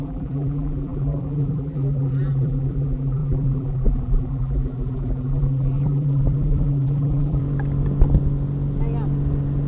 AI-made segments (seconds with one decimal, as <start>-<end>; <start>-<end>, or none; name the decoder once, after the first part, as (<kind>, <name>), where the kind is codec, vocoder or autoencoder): 0.0-7.4 (vocoder, BigVGAN v2)